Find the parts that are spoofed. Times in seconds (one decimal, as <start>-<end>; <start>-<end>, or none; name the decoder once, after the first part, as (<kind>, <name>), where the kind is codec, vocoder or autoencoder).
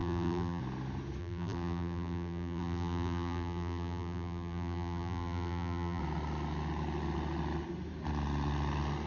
0.0-0.6 (vocoder, BigVGAN v2); 1.2-6.0